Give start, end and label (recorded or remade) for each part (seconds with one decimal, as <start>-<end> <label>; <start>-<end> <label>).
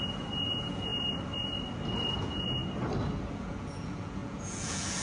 0.0-0.9 remade; 0.9-2.2 recorded; 2.2-2.6 remade; 2.6-3.3 recorded; 3.3-5.0 remade